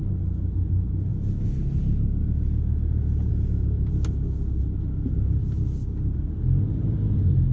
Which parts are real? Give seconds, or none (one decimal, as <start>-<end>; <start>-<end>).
0.0-3.3; 3.9-7.5